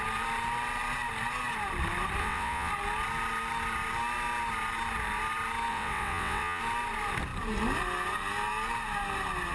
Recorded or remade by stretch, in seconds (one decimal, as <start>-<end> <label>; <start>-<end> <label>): 0.0-2.2 recorded; 2.2-2.7 remade; 2.7-5.7 recorded; 5.7-6.6 remade; 6.6-9.5 recorded